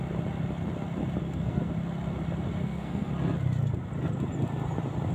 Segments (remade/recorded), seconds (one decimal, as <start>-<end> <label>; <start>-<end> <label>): 0.0-1.2 recorded; 1.2-1.7 remade; 1.7-2.6 recorded; 2.6-3.1 remade; 3.1-5.1 recorded

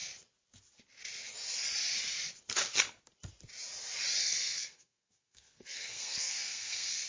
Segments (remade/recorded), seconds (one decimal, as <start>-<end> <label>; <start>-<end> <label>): 0.0-4.2 recorded; 4.2-7.1 remade

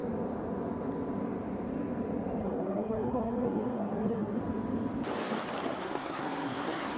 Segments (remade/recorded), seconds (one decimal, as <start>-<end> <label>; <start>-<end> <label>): 0.0-2.4 recorded; 2.4-4.4 remade; 4.4-5.8 recorded; 5.8-7.0 remade

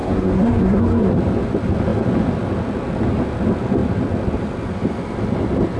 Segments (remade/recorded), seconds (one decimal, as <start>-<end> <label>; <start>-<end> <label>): 0.0-1.1 remade; 1.1-5.8 recorded

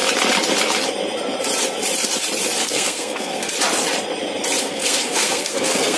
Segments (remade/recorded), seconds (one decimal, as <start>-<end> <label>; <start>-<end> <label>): 0.0-2.6 recorded; 2.6-3.5 remade; 3.5-4.6 recorded; 4.6-6.0 remade

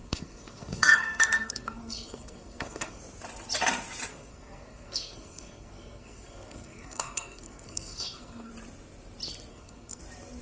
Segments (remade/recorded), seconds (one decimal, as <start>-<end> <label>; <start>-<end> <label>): 0.0-3.0 remade; 3.0-4.1 recorded; 4.1-8.5 remade; 8.5-9.5 recorded; 9.5-10.0 remade; 10.0-10.4 recorded